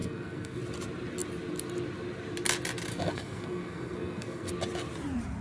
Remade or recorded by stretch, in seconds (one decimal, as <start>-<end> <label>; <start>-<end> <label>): 0.0-0.6 remade; 0.6-2.9 recorded; 2.9-4.5 remade; 4.5-5.4 recorded